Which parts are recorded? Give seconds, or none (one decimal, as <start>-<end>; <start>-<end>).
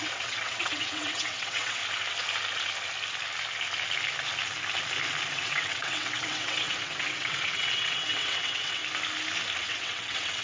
1.8-5.3; 8.8-9.6